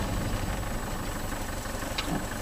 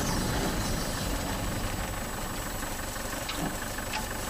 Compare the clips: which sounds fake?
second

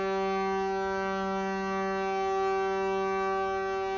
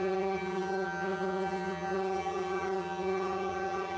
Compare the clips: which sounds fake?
second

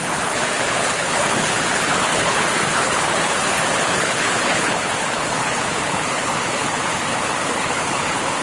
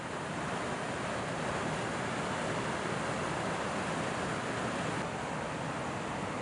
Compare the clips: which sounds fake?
first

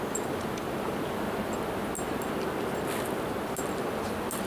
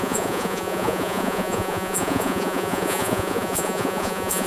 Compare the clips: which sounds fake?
second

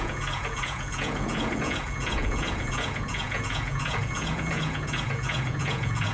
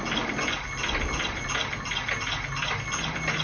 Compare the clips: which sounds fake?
first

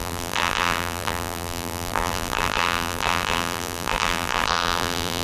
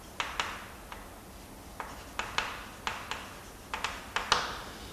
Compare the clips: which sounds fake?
first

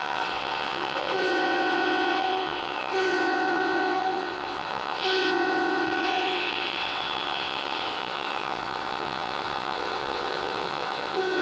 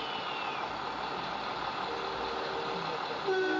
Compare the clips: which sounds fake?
first